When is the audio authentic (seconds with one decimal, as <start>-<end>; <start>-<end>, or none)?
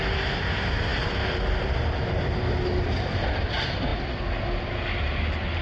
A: 0.0-0.9; 2.4-5.6